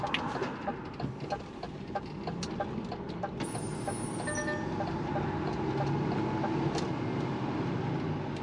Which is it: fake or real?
real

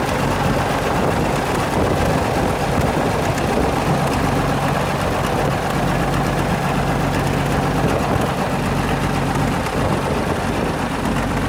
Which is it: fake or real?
real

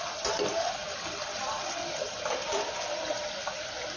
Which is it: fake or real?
real